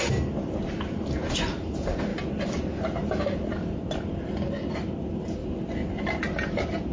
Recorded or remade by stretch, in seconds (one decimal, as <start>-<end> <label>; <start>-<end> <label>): 0.0-6.9 recorded

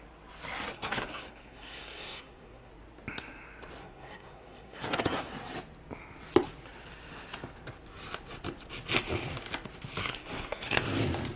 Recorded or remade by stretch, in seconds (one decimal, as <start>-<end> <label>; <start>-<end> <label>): 0.0-0.7 recorded; 0.7-2.7 remade; 2.7-3.8 recorded; 3.8-5.3 remade; 5.3-10.0 recorded; 10.0-10.8 remade; 10.8-11.4 recorded